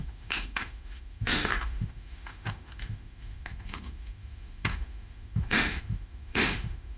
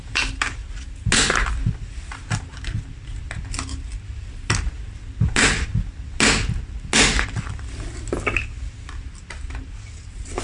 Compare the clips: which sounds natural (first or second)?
second